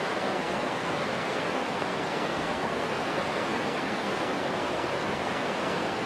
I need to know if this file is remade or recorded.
remade